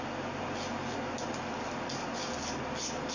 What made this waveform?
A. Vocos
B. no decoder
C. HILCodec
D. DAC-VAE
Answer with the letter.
B